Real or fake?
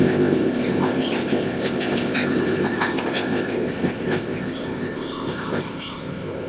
fake